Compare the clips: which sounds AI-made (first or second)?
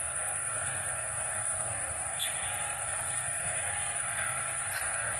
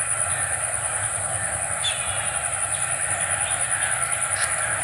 first